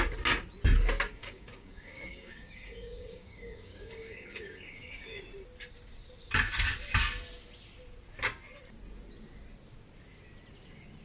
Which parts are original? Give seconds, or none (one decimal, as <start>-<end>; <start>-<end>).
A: 0.0-1.2; 5.2-11.0

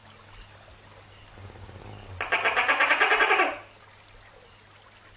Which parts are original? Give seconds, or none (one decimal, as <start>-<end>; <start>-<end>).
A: 0.0-5.2

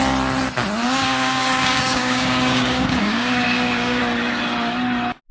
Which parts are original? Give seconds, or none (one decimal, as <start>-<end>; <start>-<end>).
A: 0.0-0.8; 4.0-5.3

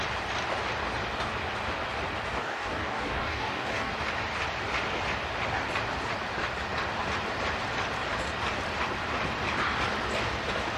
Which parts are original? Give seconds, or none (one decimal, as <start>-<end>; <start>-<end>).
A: 0.0-2.4; 3.9-10.8